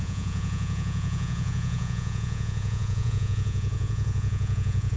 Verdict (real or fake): fake